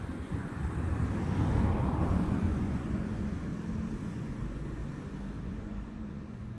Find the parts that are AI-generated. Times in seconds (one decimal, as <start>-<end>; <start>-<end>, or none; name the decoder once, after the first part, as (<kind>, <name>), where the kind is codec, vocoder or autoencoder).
0.0-0.6 (vocoder, Vocos); 2.1-3.5; 4.0-4.8; 5.4-6.6

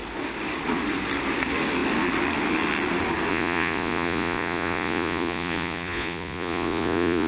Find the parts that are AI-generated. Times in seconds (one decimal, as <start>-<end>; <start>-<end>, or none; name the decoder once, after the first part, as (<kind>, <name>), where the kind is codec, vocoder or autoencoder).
3.3-7.3 (vocoder, Vocos)

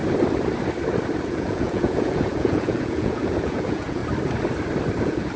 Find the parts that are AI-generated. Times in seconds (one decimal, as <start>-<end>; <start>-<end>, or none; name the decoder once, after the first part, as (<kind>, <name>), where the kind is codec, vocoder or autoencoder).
1.3-4.0 (vocoder, Vocos); 5.0-5.4

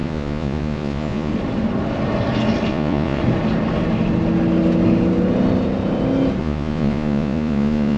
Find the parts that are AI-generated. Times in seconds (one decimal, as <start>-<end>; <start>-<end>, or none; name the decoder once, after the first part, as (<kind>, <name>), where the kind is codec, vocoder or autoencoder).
0.0-1.3 (vocoder, Vocos); 2.7-3.2; 6.4-8.0

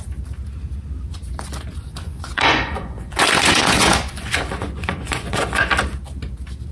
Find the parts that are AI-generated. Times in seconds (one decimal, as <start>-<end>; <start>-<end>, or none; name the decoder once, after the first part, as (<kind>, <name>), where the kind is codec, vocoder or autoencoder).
1.7-5.7 (vocoder, Vocos)

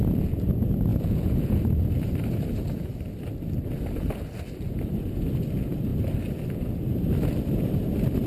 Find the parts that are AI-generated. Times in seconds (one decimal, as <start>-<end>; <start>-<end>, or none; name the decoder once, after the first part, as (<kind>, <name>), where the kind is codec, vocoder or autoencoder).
0.9-1.6 (vocoder, Vocos)

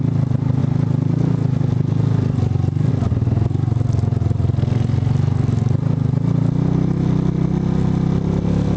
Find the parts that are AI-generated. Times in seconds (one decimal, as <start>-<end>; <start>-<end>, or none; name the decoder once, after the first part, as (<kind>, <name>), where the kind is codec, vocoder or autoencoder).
none